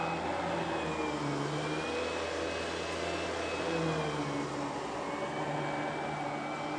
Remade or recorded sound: recorded